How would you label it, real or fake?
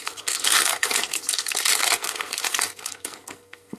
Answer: fake